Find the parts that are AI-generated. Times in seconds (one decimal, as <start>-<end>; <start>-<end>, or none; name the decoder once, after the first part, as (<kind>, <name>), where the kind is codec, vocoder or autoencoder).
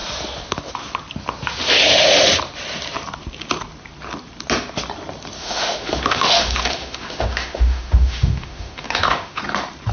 5.4-9.4 (autoencoder, DAC-VAE)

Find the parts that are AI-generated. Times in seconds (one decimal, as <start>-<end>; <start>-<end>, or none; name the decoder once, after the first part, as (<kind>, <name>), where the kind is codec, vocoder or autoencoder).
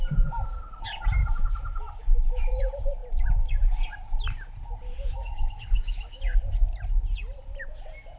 5.1-6.2 (autoencoder, DAC-VAE)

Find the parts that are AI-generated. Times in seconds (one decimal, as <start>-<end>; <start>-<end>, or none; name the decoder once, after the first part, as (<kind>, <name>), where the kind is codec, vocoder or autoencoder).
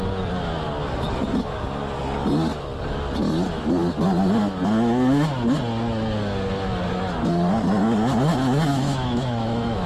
8.7-9.9 (autoencoder, DAC-VAE)